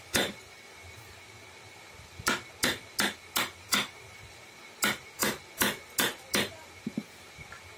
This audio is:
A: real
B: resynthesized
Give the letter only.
A